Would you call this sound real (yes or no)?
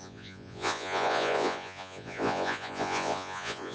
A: no